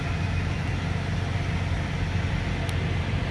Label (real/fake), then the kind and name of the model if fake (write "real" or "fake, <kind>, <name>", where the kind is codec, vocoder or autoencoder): real